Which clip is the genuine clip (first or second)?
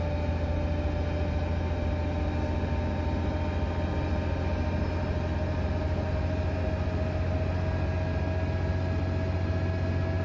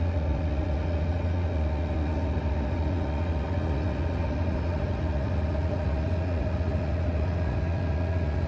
first